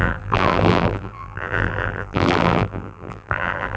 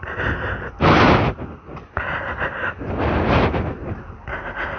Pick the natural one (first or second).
second